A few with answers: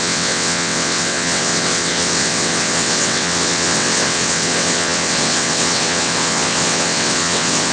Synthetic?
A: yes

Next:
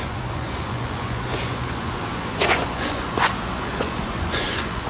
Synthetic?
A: yes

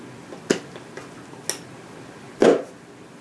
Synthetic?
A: no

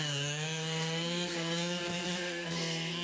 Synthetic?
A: yes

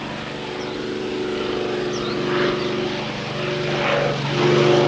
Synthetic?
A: no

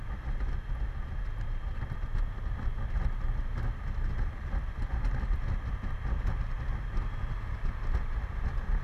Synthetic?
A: no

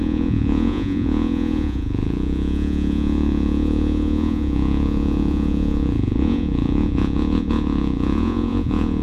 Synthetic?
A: yes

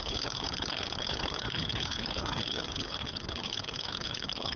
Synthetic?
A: yes